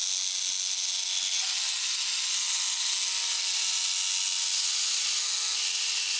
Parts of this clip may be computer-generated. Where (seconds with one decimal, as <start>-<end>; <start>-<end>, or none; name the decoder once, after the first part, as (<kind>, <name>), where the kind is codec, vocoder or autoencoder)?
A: none